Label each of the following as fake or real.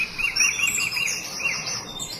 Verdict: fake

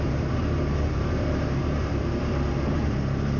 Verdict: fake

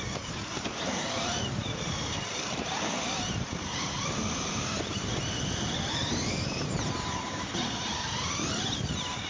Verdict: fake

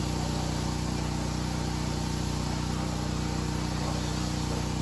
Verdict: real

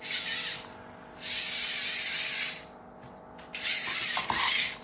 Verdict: real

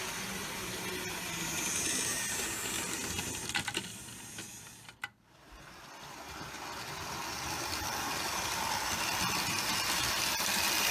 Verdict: real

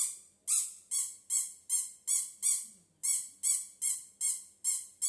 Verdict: real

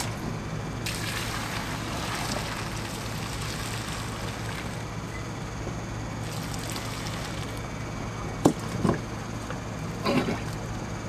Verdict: real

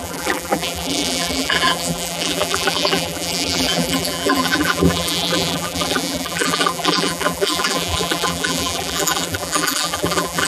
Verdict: fake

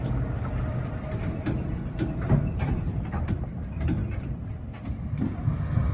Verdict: fake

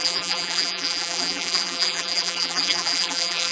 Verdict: fake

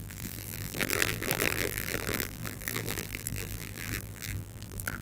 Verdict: fake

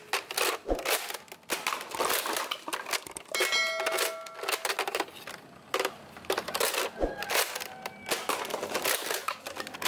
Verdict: real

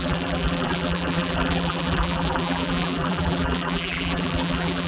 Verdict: fake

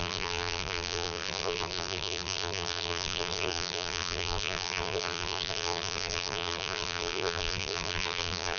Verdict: fake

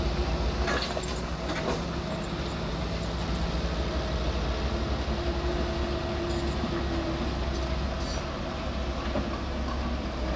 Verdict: real